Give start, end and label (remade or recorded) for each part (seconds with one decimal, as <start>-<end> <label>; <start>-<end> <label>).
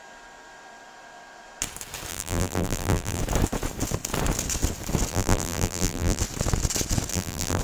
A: 0.0-2.1 recorded; 2.1-3.2 remade; 3.2-5.1 recorded; 5.1-6.2 remade; 6.2-7.1 recorded; 7.1-7.6 remade